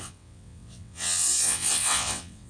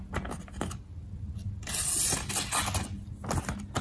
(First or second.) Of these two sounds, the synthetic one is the first